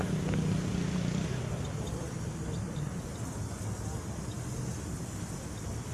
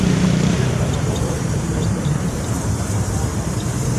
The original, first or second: first